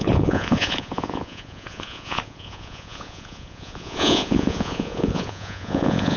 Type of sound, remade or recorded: remade